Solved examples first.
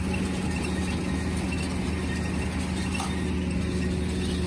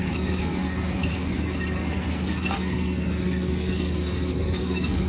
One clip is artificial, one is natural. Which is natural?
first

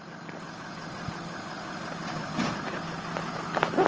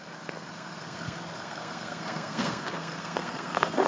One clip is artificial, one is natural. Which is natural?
first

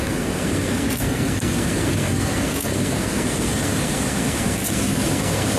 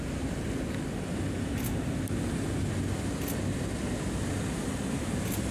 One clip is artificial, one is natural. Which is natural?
second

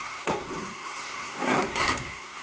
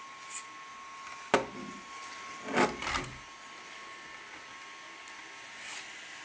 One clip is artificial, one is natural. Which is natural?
second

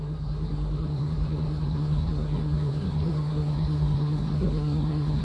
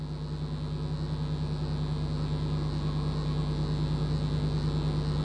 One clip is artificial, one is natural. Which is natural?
second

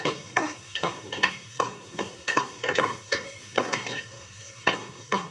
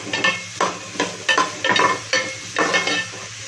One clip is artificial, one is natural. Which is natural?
second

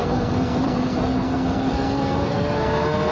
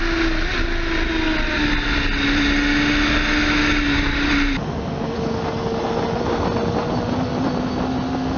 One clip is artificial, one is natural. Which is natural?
second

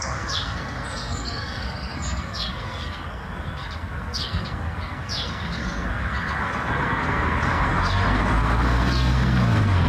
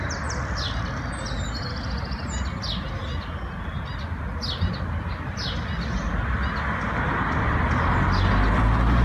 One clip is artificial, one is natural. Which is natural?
second